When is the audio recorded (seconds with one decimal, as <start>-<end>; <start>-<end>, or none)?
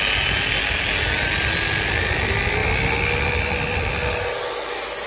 0.0-5.1